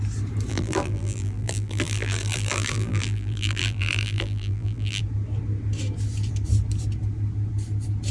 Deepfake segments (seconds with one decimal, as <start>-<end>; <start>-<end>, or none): 0.5-5.0